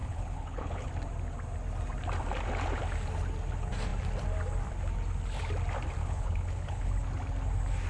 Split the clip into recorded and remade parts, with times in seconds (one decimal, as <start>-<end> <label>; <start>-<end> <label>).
0.0-0.9 remade; 0.9-6.0 recorded; 6.0-6.9 remade; 6.9-7.9 recorded